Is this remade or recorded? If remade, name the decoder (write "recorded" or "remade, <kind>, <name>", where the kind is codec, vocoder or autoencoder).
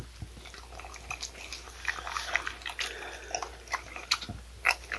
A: recorded